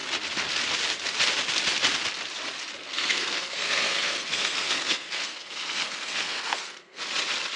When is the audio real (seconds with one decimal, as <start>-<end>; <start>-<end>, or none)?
0.0-2.8; 7.0-7.6